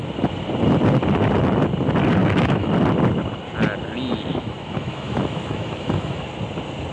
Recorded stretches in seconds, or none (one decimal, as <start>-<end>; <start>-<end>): 0.0-2.2; 2.7-4.3; 6.2-6.9